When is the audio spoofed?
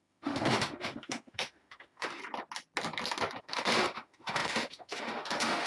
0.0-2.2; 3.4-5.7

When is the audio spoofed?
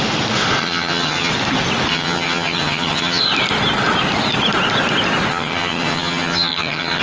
0.6-1.3; 1.9-3.2; 5.3-7.0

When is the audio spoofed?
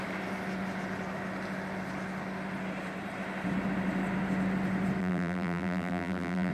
5.0-6.5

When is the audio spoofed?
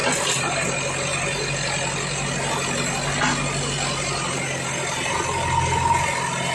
none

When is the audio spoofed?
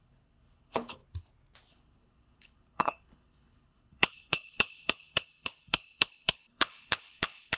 0.0-1.0; 1.7-7.6